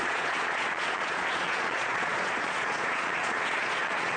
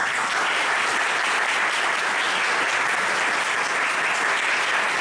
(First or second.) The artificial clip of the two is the first